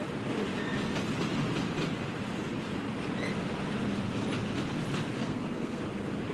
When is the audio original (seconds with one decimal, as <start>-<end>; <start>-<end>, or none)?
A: 0.0-5.2; 5.8-6.3